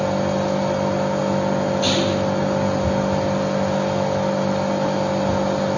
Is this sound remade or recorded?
recorded